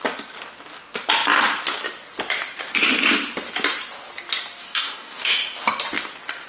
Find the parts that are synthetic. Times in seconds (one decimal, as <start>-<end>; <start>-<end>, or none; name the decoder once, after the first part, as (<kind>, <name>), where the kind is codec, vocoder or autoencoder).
4.6-5.3 (codec, DAC)